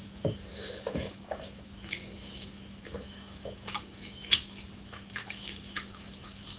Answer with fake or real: fake